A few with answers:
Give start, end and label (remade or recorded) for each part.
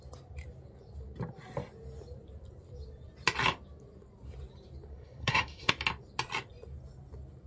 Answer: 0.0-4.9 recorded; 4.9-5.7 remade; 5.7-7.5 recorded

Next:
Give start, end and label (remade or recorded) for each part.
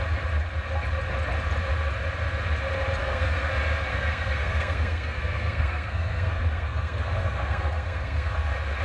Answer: 0.0-3.0 recorded; 3.0-3.5 remade; 3.5-3.9 recorded; 3.9-8.3 remade; 8.3-8.8 recorded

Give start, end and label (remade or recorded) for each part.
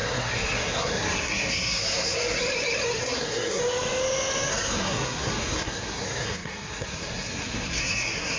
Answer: 0.0-2.4 remade; 2.4-3.0 recorded; 3.0-3.6 remade; 3.6-4.5 recorded; 4.5-8.4 remade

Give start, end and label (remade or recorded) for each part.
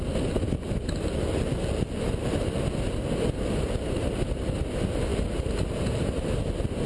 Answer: 0.0-6.9 recorded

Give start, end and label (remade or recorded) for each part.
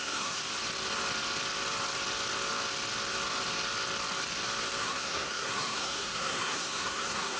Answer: 0.0-0.4 remade; 0.4-4.8 recorded; 4.8-7.4 remade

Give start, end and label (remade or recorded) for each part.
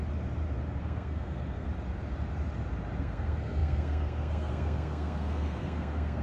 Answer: 0.0-0.8 recorded; 0.8-1.7 remade; 1.7-3.0 recorded; 3.0-6.2 remade